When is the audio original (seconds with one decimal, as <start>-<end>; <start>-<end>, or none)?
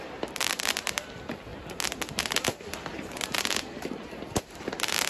1.5-4.4